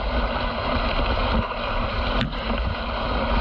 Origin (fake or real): real